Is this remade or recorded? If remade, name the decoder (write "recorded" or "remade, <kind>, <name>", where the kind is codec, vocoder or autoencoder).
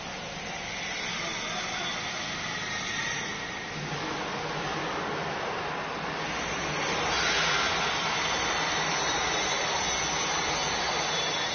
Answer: recorded